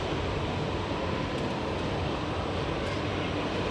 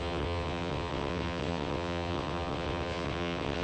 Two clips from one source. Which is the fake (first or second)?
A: second